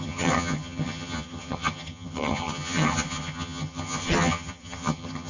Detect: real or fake fake